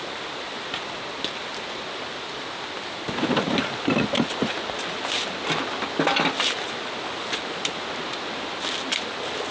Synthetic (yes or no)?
no